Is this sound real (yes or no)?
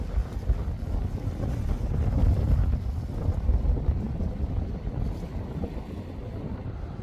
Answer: yes